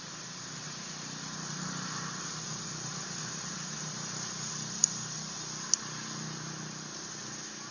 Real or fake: real